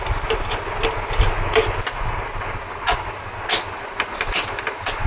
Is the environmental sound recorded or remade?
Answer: recorded